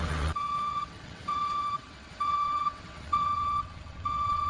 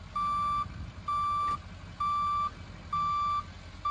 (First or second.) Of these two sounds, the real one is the second